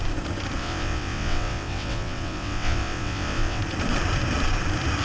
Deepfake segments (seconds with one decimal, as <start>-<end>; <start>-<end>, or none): 0.6-3.6